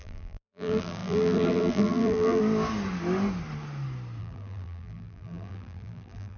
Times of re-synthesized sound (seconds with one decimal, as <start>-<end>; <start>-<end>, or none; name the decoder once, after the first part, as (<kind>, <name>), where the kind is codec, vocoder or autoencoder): 0.0-2.4 (vocoder, BigVGAN v2); 4.2-6.4